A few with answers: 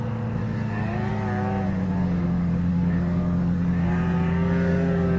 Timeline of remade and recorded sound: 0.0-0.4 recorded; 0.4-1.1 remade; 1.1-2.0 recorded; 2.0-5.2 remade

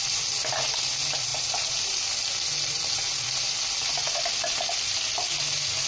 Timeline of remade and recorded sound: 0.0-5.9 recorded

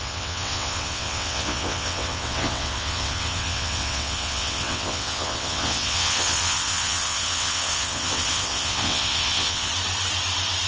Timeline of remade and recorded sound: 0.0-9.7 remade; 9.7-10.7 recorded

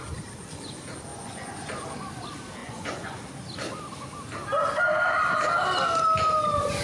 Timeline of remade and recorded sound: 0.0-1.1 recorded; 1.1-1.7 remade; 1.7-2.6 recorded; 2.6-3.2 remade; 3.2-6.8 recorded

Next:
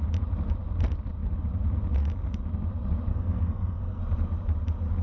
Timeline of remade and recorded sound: 0.0-3.1 recorded; 3.1-4.0 remade; 4.0-5.0 recorded

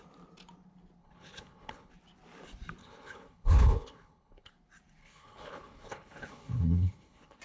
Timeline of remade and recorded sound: 0.0-1.0 recorded; 1.0-1.9 remade; 1.9-2.8 recorded; 2.8-4.5 remade; 4.5-5.0 recorded; 5.0-7.4 remade

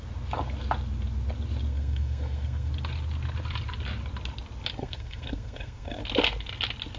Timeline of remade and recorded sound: 0.0-1.7 recorded; 1.7-2.7 remade; 2.7-4.8 recorded; 4.8-6.0 remade; 6.0-7.0 recorded

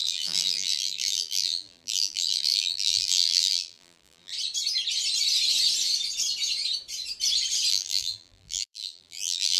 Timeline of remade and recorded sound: 0.0-4.3 remade; 4.3-7.7 recorded; 7.7-9.6 remade